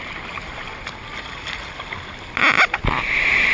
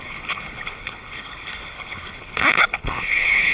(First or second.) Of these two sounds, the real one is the first